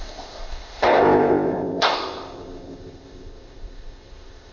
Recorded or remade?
remade